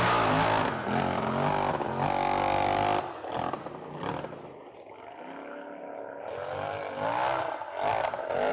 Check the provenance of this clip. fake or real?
real